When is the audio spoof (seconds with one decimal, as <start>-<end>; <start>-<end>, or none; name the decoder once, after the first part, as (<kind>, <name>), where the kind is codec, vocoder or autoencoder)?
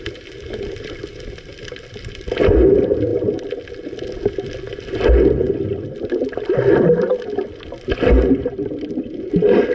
none